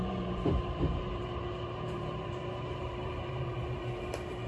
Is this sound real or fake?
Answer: fake